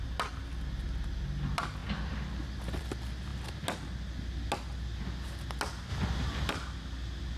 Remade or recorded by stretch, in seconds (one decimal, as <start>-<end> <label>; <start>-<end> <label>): 0.0-5.9 recorded; 5.9-6.5 remade; 6.5-7.4 recorded